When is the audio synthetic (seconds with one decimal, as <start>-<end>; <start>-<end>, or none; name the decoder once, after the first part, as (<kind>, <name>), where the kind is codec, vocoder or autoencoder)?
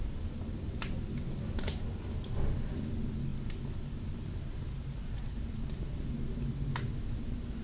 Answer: none